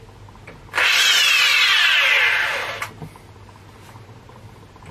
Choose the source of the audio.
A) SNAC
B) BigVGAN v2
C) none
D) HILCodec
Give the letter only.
C